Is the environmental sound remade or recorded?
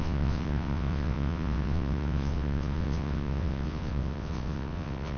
remade